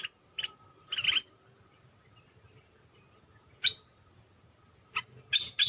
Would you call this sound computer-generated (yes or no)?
no